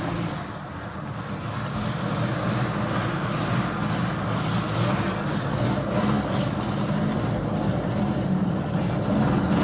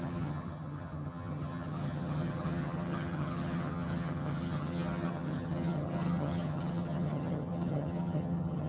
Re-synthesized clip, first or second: second